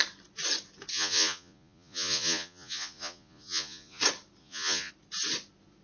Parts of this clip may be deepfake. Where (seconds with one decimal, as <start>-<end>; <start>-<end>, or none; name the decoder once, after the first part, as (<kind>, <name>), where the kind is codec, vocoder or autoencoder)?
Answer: 0.9-4.0 (vocoder, Vocos); 4.4-4.9